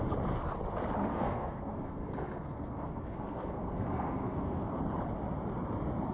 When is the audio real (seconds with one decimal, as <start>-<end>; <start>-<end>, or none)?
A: 0.0-1.1; 4.8-6.1